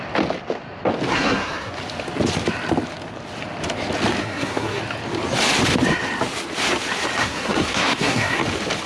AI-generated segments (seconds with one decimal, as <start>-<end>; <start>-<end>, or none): 1.1-1.7; 4.2-4.8; 7.2-8.4